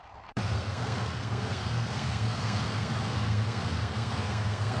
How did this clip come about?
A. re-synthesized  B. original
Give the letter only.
A